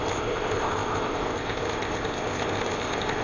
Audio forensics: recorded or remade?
remade